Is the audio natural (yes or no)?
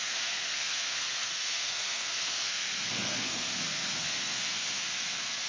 no